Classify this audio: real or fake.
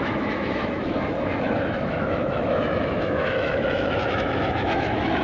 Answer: fake